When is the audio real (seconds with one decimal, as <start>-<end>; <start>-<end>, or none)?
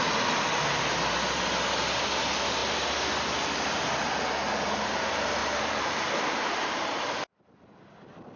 0.0-5.4; 7.1-8.4